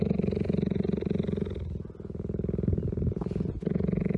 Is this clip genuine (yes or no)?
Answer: yes